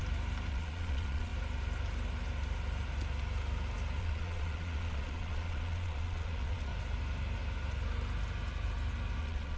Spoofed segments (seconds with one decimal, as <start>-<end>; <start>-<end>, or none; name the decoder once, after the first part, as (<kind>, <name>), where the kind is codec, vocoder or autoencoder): 0.5-1.3 (vocoder, Vocos); 4.0-6.7; 9.2-9.6